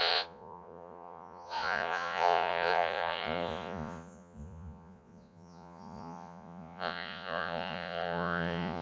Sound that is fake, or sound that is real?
fake